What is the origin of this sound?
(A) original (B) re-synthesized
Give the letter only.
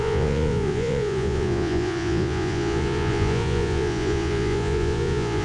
B